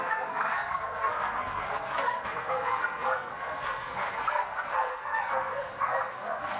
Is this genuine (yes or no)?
no